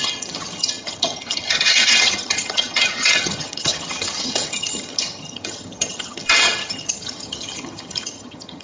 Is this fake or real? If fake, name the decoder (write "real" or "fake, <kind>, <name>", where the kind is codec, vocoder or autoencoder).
fake, vocoder, HiFi-GAN